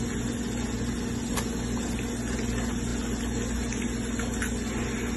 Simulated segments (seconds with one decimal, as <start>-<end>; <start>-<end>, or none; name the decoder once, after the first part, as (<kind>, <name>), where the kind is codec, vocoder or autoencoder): none